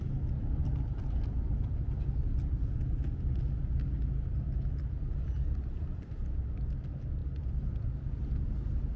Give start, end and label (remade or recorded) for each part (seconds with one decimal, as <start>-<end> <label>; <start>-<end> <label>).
0.0-5.8 recorded; 5.8-6.4 remade; 6.4-7.2 recorded; 7.2-8.5 remade; 8.5-9.0 recorded